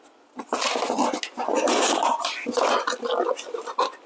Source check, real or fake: real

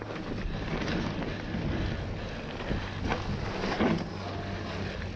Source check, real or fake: real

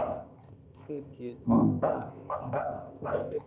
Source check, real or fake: fake